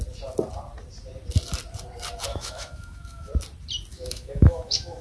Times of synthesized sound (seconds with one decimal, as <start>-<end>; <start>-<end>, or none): 2.3-3.3; 3.9-5.0

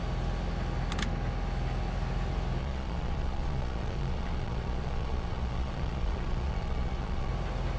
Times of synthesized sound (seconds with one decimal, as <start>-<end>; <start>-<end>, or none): 2.6-7.3